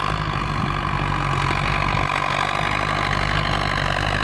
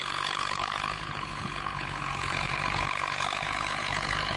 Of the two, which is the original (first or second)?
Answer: first